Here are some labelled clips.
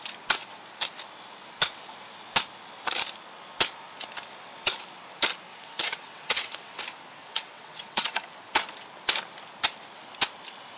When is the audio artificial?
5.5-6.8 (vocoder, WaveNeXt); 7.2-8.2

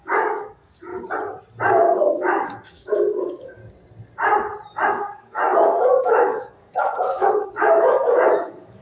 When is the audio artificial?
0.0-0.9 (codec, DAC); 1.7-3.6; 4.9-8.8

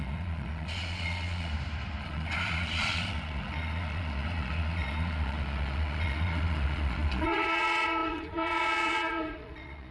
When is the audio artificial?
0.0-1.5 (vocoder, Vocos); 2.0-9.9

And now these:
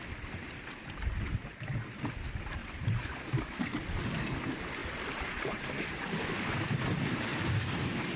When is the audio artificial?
2.6-3.3 (vocoder, BigVGAN v2); 4.8-6.0; 7.3-8.2

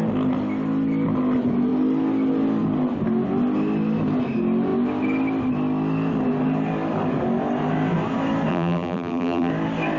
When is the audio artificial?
8.5-9.5 (vocoder, BigVGAN v2)

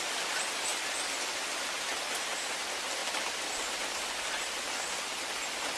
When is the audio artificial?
none

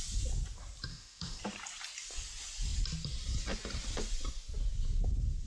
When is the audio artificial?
0.9-1.4 (autoencoder, DAC-VAE)